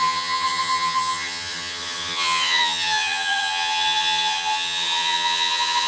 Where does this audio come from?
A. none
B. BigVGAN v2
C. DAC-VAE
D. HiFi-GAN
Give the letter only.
D